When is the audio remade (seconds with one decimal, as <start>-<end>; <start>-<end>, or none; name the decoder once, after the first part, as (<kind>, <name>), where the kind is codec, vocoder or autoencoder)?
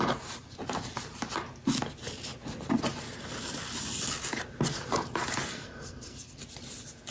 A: 5.5-6.4 (codec, SNAC)